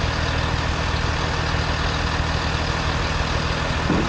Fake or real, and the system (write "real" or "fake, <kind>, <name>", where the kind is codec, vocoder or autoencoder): real